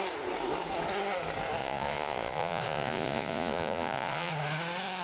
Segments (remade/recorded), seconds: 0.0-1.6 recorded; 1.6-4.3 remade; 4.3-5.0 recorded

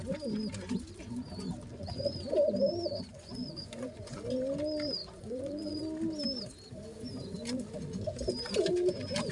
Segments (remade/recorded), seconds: 0.0-1.7 recorded; 1.7-2.2 remade; 2.2-3.1 recorded; 3.1-4.2 remade; 4.2-5.0 recorded; 5.0-5.8 remade; 5.8-9.3 recorded

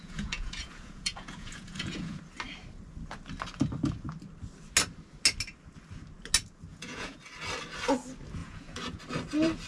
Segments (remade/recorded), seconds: 0.0-2.2 remade; 2.2-6.7 recorded; 6.7-7.2 remade; 7.2-8.4 recorded; 8.4-9.0 remade; 9.0-9.7 recorded

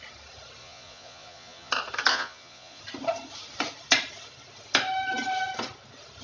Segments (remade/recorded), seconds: 0.0-0.6 recorded; 0.6-1.7 remade; 1.7-2.1 recorded; 2.1-2.8 remade; 2.8-6.2 recorded

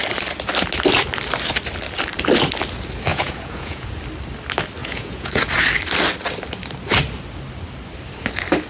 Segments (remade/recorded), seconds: 0.0-3.1 recorded; 3.1-3.9 remade; 3.9-4.8 recorded; 4.8-5.4 remade; 5.4-8.7 recorded

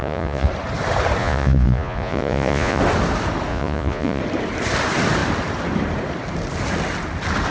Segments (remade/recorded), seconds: 0.0-0.5 remade; 0.5-1.2 recorded; 1.2-2.8 remade; 2.8-3.5 recorded; 3.5-4.2 remade; 4.2-7.5 recorded

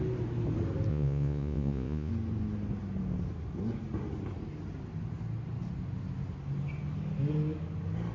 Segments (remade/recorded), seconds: 0.0-0.9 recorded; 0.9-2.1 remade; 2.1-8.1 recorded